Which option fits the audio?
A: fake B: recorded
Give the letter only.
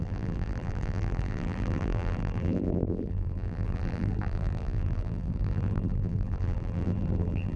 A